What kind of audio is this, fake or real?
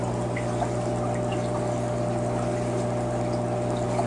real